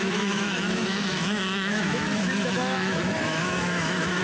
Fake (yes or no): yes